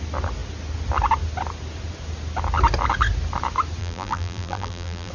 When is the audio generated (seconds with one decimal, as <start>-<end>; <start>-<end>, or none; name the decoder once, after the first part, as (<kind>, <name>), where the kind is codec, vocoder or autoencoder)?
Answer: 3.8-5.1 (vocoder, BigVGAN v2)